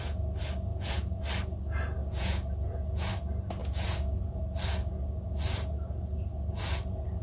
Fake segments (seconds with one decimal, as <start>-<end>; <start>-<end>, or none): 0.7-1.2; 2.0-3.1; 3.6-4.4